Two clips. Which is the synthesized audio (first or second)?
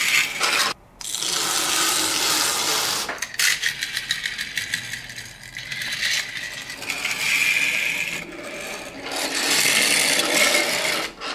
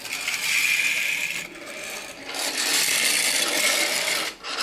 second